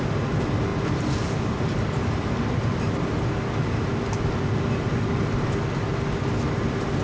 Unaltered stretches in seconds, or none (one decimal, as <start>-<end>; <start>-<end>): 0.0-7.0